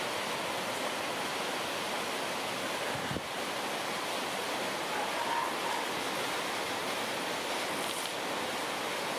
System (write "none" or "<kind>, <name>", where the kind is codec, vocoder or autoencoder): none